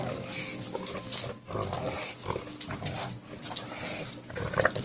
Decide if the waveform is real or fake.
real